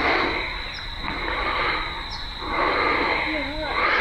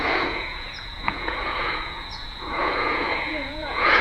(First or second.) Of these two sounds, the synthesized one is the second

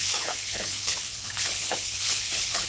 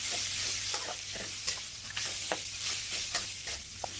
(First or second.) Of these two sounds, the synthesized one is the first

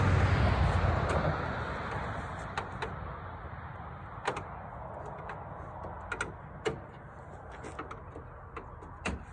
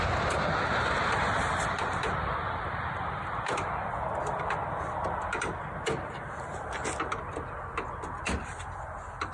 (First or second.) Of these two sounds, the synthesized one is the second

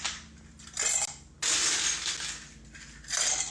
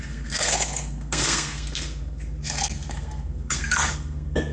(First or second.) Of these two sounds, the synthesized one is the second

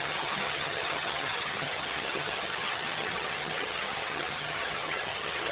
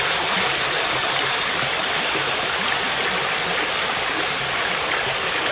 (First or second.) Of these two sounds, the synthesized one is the first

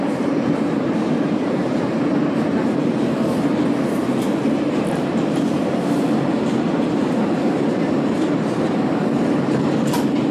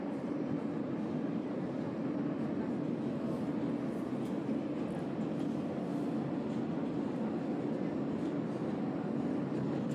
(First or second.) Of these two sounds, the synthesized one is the first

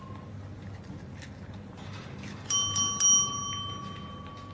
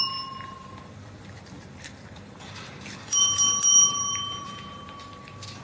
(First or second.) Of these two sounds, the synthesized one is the second